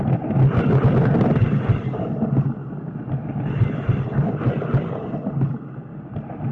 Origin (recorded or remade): recorded